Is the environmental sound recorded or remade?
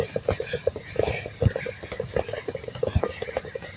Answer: recorded